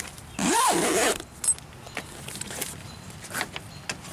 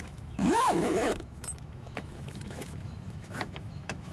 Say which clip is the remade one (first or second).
second